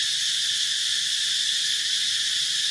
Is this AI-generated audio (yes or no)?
yes